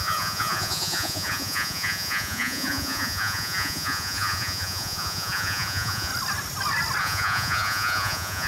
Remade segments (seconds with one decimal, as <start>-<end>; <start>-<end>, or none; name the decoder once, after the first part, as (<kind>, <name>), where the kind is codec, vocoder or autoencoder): 0.0-6.1 (vocoder, Vocos); 7.0-8.5